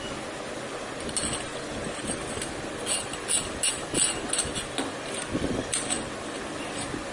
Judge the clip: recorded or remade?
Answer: recorded